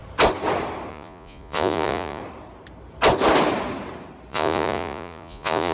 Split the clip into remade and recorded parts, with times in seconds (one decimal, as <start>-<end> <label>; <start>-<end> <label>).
0.0-0.9 recorded; 0.9-2.2 remade; 2.2-4.3 recorded; 4.3-5.7 remade